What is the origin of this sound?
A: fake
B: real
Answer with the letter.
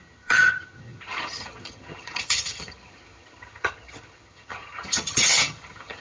A